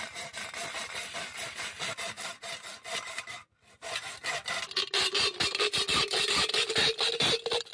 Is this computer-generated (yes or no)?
no